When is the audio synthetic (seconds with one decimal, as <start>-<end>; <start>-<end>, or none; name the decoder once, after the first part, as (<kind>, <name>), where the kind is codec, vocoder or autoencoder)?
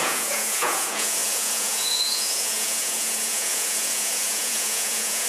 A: 0.0-5.3 (vocoder, Vocos)